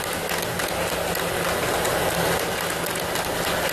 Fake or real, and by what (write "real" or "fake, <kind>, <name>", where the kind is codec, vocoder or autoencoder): real